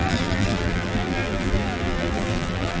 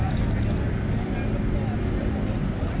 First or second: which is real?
second